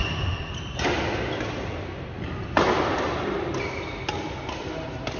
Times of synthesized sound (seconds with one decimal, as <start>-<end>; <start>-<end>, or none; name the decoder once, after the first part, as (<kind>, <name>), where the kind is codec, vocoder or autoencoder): none

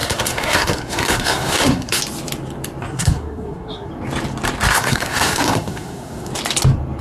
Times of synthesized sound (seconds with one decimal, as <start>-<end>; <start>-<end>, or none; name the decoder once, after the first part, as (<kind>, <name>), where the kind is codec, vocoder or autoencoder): 0.0-2.0 (codec, SNAC); 2.9-3.9; 4.7-6.3

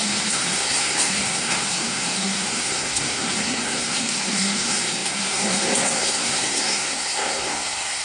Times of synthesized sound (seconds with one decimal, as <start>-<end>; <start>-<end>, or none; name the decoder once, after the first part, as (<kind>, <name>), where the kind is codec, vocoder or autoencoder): 0.0-8.0 (codec, SNAC)

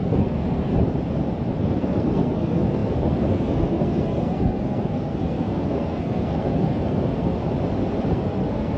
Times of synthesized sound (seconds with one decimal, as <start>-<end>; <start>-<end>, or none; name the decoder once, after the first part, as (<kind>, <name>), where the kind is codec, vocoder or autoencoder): 0.0-0.8 (codec, SNAC); 1.6-7.4; 8.1-8.8

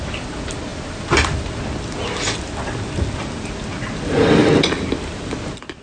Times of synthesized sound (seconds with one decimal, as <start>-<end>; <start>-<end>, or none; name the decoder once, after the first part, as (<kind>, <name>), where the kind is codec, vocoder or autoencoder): none